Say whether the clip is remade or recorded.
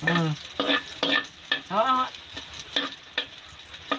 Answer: recorded